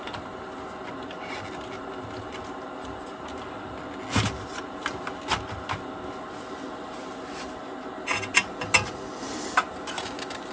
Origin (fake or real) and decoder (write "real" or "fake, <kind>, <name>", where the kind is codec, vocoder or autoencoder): real